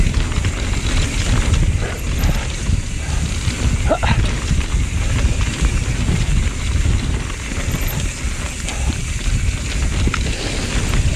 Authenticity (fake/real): real